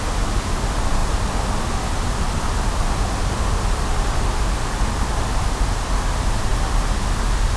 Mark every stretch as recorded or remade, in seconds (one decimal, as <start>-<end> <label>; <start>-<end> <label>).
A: 0.0-7.6 recorded